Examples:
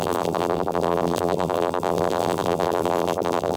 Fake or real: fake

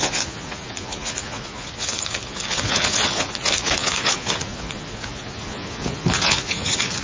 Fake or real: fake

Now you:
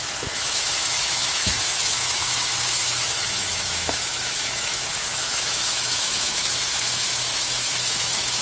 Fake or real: fake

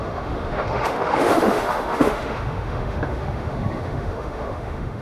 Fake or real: fake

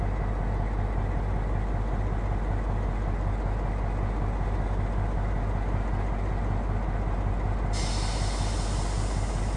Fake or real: real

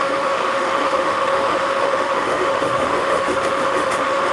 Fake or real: fake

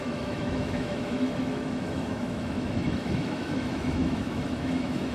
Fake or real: fake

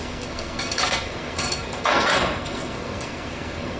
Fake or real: fake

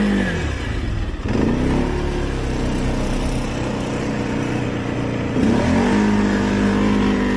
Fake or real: real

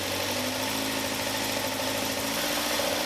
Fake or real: real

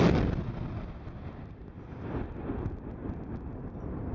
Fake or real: real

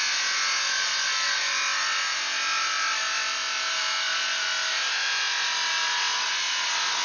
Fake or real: real